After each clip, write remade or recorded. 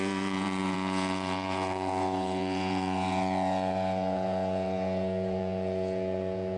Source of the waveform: remade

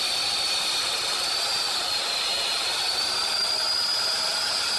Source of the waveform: recorded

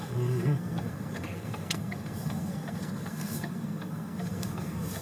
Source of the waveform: remade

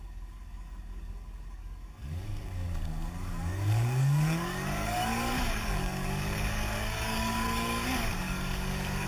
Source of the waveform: remade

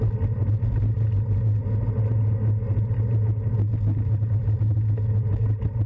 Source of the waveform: recorded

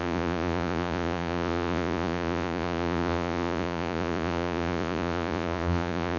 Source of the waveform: remade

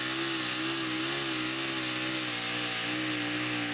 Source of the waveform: recorded